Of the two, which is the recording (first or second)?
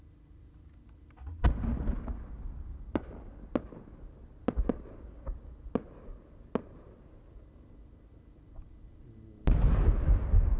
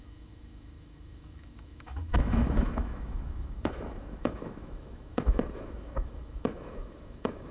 first